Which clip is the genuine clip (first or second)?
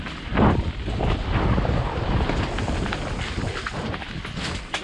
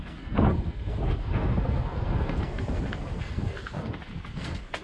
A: first